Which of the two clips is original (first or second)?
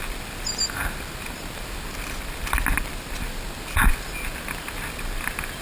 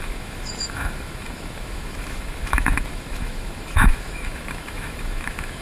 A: first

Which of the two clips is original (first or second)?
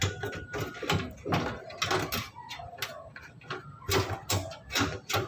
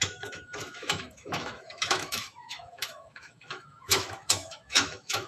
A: first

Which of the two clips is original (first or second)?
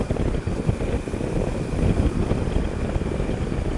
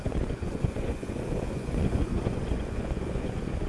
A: first